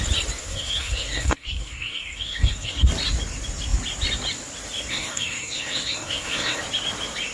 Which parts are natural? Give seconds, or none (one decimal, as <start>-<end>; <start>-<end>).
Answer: 0.0-0.4; 2.9-4.9; 6.6-7.3